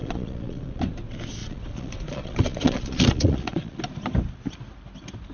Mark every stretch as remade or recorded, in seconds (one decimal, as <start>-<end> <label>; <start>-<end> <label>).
0.0-0.8 remade; 0.8-1.4 recorded; 1.4-3.8 remade; 3.8-5.3 recorded